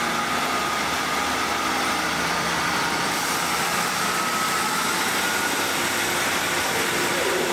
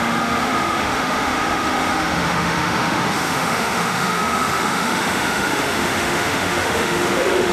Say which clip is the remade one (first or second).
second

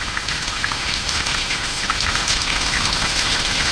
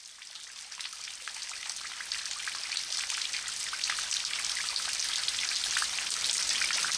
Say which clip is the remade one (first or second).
first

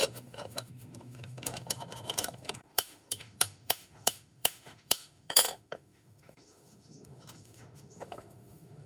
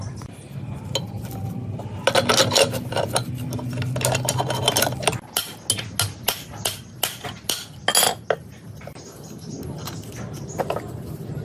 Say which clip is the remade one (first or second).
first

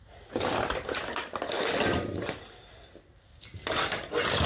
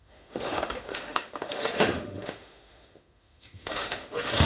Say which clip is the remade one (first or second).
second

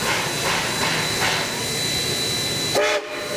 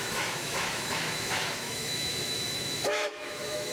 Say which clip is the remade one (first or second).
second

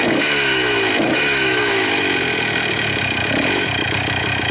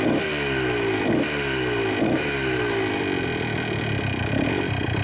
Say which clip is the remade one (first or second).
first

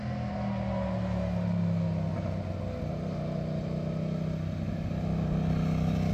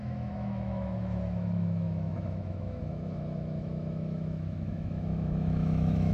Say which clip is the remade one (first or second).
second